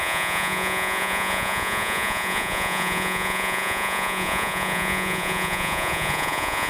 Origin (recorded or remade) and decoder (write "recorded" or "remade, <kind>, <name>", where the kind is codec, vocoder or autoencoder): remade, vocoder, Vocos